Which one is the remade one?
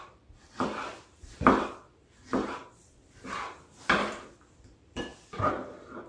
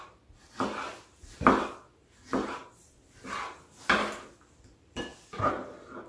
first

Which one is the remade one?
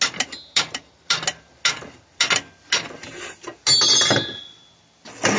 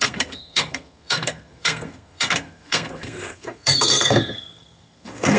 second